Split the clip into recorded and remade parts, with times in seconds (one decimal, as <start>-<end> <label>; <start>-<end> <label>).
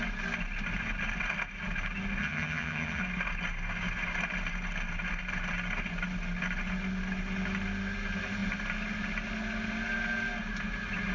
0.0-2.2 recorded; 2.2-3.0 remade; 3.0-11.1 recorded